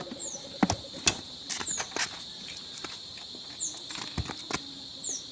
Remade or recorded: recorded